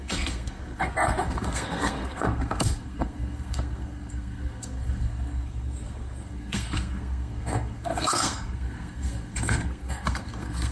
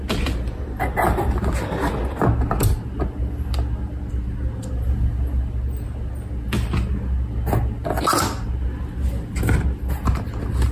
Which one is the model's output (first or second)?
first